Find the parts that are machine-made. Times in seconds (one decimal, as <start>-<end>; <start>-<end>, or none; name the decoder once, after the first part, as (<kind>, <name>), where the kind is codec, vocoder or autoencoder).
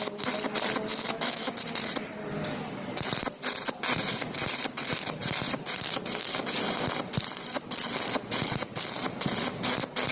0.9-1.5 (autoencoder, DAC-VAE)